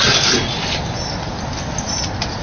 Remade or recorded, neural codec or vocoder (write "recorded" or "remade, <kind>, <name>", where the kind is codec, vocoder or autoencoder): recorded